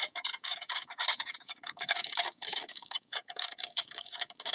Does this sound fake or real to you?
fake